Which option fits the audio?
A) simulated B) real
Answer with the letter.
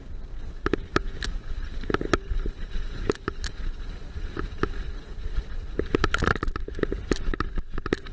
B